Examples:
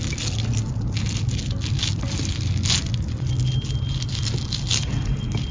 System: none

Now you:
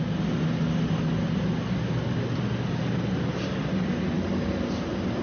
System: none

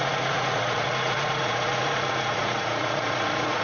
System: vocoder, Vocos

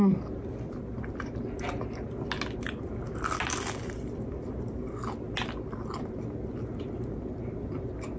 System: none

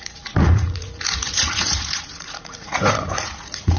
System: vocoder, Vocos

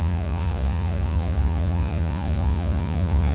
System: vocoder, Vocos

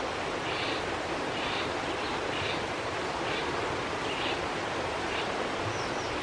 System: none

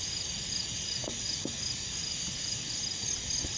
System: none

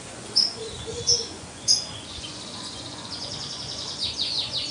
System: vocoder, Vocos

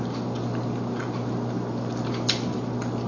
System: none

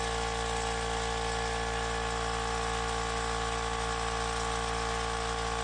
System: none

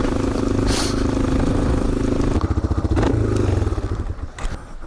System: none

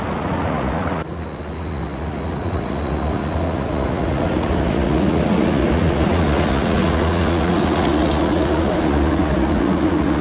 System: vocoder, Vocos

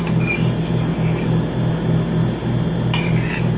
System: none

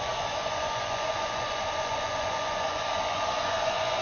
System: vocoder, Vocos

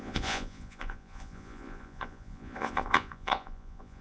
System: vocoder, Vocos